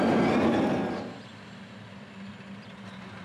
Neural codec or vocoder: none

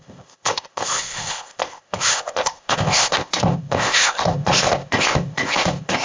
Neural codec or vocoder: codec, ZipCodec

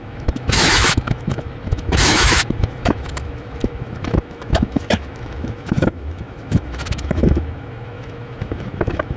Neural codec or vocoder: autoencoder, DAC-VAE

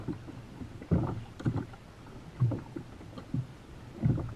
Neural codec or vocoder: none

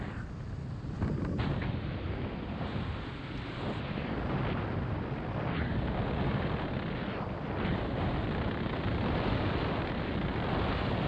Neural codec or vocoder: none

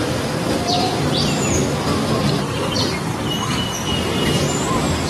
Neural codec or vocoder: none